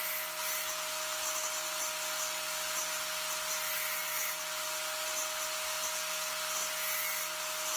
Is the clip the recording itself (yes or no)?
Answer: yes